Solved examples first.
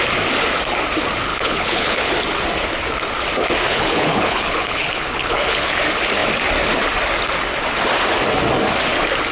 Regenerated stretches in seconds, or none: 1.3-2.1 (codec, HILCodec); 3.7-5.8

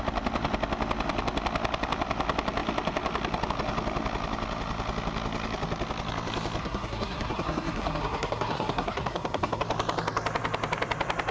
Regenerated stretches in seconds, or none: 6.6-9.6 (codec, SNAC)

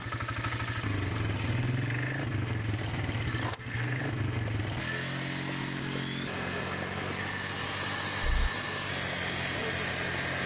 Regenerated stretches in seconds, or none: 3.4-4.0 (codec, SNAC)

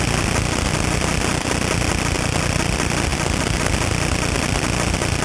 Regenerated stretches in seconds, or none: none

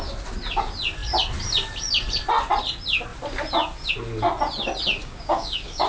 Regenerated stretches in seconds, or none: 5.0-5.9 (codec, DAC)